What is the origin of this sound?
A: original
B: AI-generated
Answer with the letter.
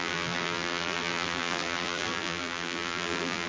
B